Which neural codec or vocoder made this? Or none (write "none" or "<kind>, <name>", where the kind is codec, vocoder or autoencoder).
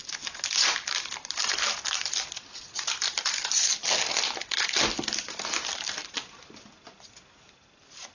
none